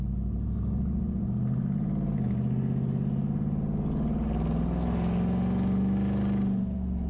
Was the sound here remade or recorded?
recorded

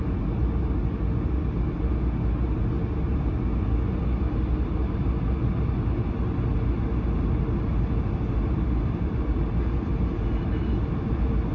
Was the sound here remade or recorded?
recorded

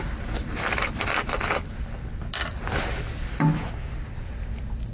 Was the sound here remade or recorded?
recorded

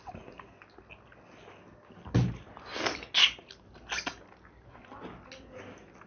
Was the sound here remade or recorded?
recorded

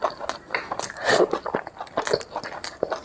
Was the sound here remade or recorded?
recorded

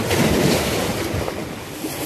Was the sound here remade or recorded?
recorded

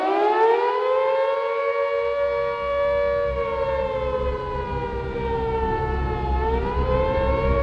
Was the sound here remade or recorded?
recorded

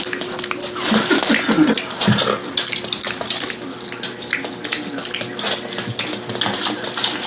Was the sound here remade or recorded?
recorded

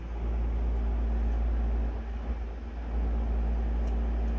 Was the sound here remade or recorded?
recorded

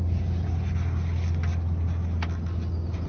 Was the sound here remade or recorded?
recorded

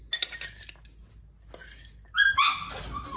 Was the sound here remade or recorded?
recorded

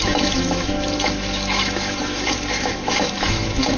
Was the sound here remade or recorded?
remade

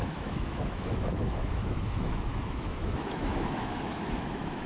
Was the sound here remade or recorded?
remade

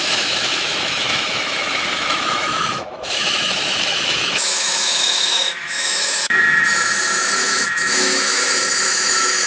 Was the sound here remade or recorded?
remade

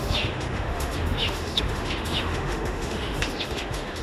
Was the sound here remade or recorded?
remade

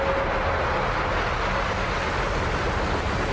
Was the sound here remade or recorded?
recorded